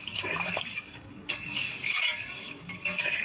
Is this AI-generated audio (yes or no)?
yes